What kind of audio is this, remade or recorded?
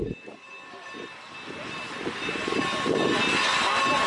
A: recorded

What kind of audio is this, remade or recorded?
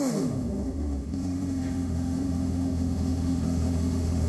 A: remade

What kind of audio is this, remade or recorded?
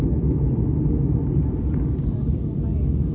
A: recorded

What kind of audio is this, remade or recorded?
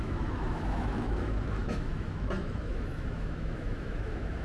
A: remade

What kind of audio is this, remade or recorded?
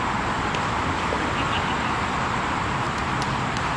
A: recorded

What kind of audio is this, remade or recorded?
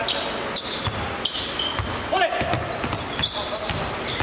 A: recorded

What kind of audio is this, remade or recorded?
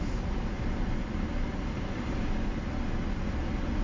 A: recorded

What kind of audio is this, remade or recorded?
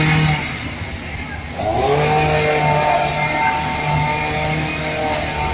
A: recorded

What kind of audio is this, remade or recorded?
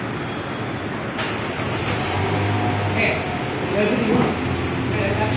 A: recorded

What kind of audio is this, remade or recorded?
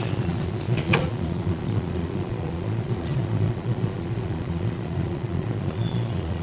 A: remade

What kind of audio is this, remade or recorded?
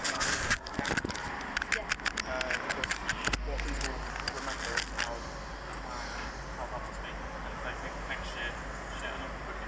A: recorded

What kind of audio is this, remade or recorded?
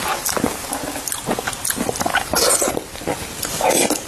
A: recorded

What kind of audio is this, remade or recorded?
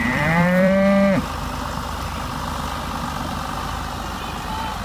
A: remade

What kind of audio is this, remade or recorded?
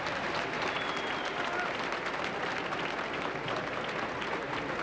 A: recorded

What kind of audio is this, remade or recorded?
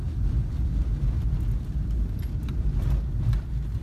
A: recorded